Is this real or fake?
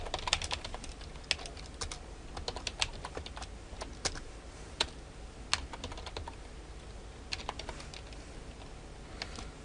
real